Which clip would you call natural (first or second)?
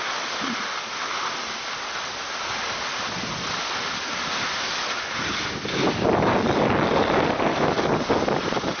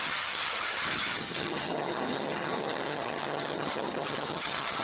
first